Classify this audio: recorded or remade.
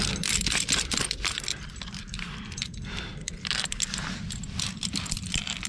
remade